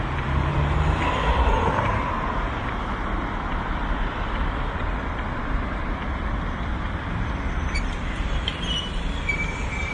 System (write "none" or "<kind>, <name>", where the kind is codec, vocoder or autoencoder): vocoder, BigVGAN v2